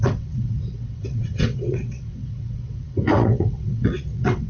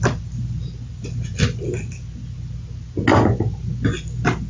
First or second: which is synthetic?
first